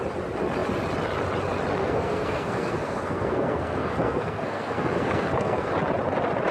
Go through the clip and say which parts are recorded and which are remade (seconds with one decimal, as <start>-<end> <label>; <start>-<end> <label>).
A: 0.0-1.8 recorded; 1.8-5.7 remade; 5.7-6.5 recorded